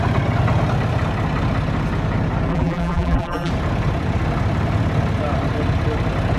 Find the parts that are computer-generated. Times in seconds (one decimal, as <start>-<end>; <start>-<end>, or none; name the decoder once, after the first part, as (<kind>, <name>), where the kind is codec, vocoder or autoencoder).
2.5-3.5 (vocoder, BigVGAN v2)